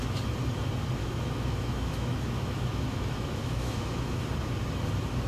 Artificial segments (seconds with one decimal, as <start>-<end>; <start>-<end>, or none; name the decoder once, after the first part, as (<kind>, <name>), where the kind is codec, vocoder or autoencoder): 1.0-4.2 (autoencoder, DAC-VAE)